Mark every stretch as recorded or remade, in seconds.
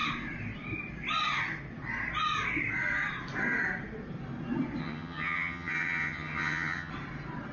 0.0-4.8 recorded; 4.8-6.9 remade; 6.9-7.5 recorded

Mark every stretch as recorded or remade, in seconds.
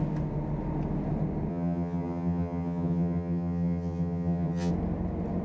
0.0-1.5 recorded; 1.5-4.7 remade; 4.7-5.4 recorded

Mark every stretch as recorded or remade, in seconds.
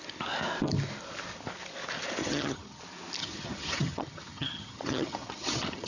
0.0-2.2 recorded; 2.2-2.8 remade; 2.8-3.2 recorded; 3.2-5.9 remade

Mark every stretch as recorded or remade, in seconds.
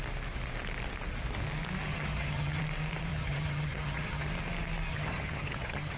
0.0-1.9 recorded; 1.9-2.6 remade; 2.6-3.1 recorded; 3.1-4.3 remade; 4.3-4.9 recorded; 4.9-6.0 remade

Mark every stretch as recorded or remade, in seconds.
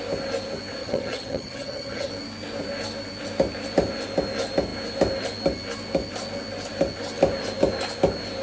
0.0-0.8 recorded; 0.8-2.1 remade; 2.1-8.4 recorded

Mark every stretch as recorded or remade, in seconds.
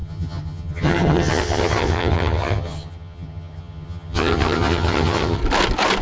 0.0-5.4 remade; 5.4-6.0 recorded